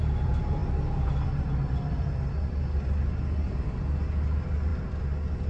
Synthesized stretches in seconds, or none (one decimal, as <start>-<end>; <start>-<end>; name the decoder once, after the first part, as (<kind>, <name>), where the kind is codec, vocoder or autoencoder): none